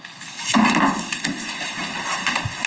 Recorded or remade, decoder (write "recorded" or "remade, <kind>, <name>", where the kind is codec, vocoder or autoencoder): recorded